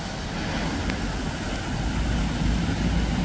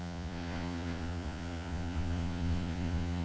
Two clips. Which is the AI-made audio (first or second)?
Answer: second